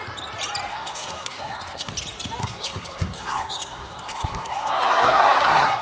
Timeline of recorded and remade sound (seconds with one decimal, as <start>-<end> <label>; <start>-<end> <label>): 0.0-0.7 recorded; 0.7-1.9 remade; 1.9-2.4 recorded; 2.4-5.8 remade